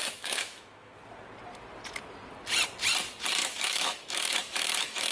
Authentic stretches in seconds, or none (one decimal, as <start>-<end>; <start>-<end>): 0.9-3.4